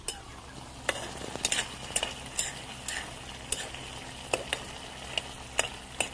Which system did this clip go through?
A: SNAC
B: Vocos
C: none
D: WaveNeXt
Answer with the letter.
C